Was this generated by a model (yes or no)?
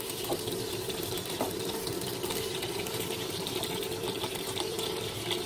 yes